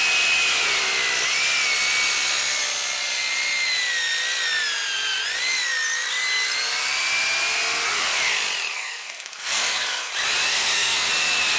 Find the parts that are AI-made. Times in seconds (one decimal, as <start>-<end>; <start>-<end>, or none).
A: 8.7-10.1; 10.5-11.1